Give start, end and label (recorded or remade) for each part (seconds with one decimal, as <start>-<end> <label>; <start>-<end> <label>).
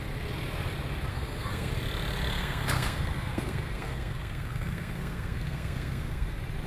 0.0-1.1 recorded; 1.1-1.7 remade; 1.7-2.3 recorded; 2.3-6.3 remade; 6.3-6.7 recorded